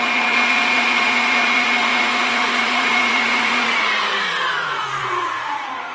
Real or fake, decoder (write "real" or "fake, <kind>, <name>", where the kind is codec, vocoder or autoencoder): fake, vocoder, Vocos